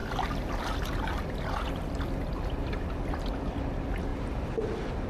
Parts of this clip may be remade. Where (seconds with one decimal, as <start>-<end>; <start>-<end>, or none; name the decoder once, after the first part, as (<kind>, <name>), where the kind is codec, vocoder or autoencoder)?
3.1-4.1 (vocoder, BigVGAN v2)

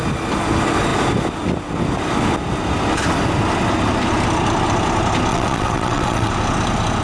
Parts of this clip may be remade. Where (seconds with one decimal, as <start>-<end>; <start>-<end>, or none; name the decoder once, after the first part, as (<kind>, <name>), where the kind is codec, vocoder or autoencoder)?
5.3-6.3 (vocoder, WaveNeXt)

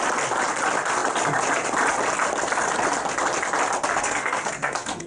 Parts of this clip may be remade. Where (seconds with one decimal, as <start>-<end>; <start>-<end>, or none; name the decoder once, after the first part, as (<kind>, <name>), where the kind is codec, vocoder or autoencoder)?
3.9-5.1 (codec, SNAC)

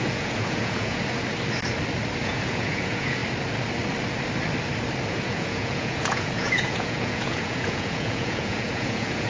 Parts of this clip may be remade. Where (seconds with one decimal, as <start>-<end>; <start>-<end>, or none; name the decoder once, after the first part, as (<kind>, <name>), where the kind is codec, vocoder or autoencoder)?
0.0-1.0 (vocoder, Vocos); 2.2-3.2; 5.1-9.3